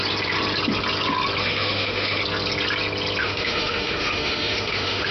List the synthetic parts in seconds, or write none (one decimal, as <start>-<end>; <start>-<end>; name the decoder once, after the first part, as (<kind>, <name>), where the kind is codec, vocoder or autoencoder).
1.4-2.2 (autoencoder, DAC-VAE); 3.2-5.1